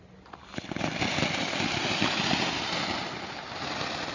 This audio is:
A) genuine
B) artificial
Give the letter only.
A